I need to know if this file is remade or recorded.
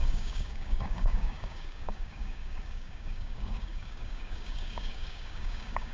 remade